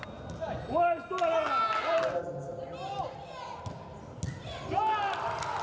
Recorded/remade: recorded